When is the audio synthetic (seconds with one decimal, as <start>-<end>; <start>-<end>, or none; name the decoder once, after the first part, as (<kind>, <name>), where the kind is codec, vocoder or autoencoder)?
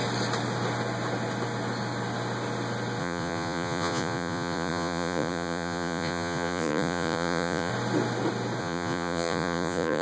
3.0-7.7 (vocoder, Vocos); 8.6-10.0